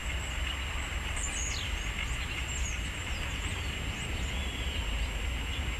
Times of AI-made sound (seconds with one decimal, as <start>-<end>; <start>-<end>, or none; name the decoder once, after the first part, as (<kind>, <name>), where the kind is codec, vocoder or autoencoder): none

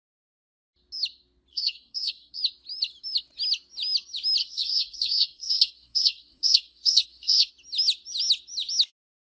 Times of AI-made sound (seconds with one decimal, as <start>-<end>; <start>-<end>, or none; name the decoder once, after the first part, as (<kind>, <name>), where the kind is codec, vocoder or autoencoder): 1.5-2.4 (codec, SNAC); 4.4-7.5

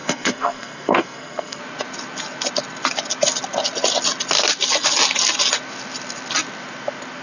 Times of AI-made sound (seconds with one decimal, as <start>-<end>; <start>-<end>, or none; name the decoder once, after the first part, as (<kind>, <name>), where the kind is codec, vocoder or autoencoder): 0.0-1.6 (codec, SNAC)